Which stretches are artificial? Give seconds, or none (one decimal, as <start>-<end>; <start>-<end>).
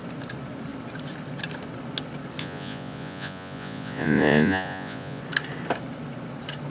2.4-5.2